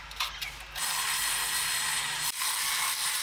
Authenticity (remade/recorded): recorded